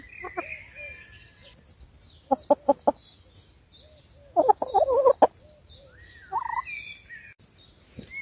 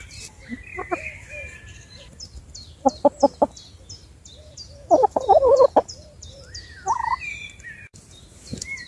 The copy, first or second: second